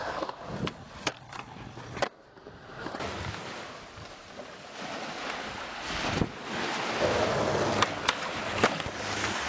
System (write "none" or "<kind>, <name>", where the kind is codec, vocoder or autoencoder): none